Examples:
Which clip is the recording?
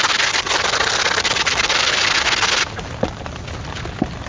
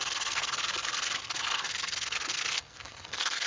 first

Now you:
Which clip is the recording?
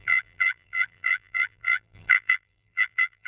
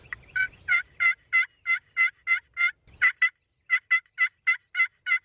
second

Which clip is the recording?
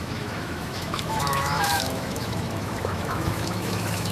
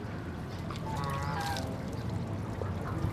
second